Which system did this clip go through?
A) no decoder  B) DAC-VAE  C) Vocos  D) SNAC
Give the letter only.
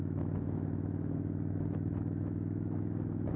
B